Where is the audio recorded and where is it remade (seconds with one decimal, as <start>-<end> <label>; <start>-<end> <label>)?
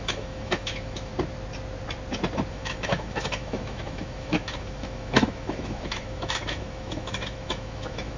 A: 0.0-1.1 remade; 1.1-2.5 recorded; 2.5-8.2 remade